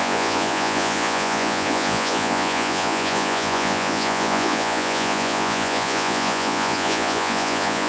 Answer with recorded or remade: remade